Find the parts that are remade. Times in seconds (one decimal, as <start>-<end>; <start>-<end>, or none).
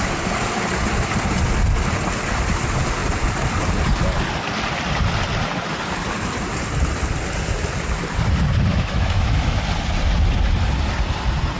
8.7-9.6